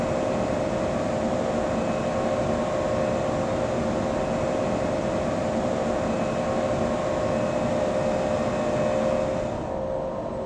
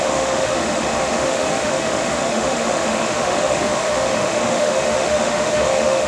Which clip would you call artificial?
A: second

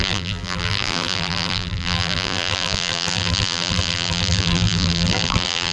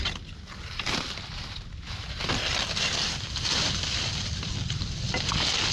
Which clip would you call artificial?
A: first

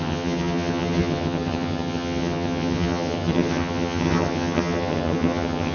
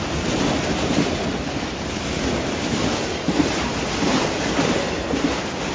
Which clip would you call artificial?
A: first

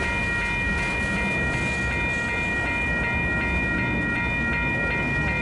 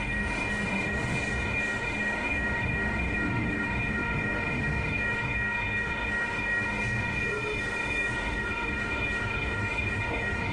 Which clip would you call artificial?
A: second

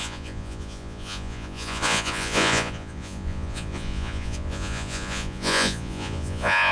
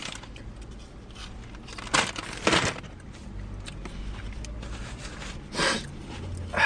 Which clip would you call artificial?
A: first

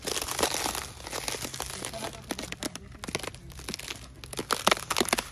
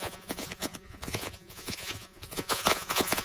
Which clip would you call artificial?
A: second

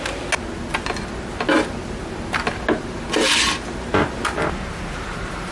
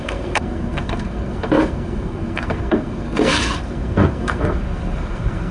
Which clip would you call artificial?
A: second